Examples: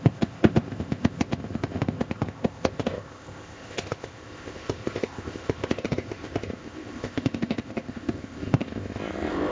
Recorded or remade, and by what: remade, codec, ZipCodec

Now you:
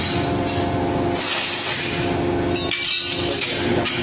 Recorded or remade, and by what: recorded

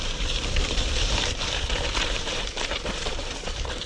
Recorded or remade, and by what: remade, vocoder, BigVGAN v2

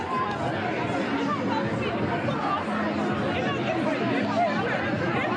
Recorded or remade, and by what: recorded